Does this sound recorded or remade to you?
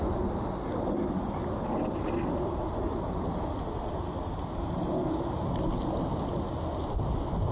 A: recorded